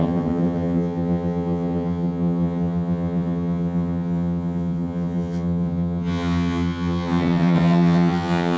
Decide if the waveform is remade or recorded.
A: remade